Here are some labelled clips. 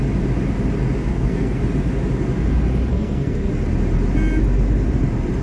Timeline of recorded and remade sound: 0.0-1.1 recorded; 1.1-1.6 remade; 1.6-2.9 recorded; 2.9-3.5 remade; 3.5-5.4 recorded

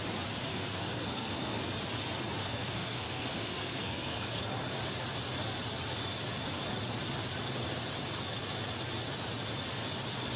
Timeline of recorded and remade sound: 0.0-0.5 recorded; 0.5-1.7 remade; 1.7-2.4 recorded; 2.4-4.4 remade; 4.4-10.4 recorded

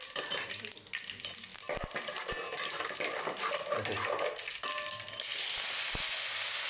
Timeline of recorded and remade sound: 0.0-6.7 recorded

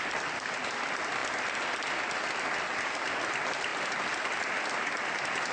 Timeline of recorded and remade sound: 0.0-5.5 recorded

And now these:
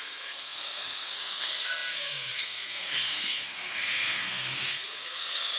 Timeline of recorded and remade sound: 0.0-5.6 remade

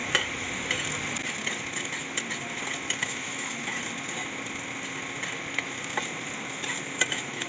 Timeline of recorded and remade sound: 0.0-3.0 recorded; 3.0-3.7 remade; 3.7-7.1 recorded; 7.1-7.5 remade